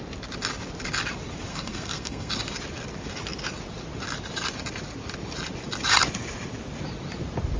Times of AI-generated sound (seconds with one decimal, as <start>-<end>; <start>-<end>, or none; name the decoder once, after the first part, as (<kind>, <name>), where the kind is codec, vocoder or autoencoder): 1.5-2.3 (codec, SNAC)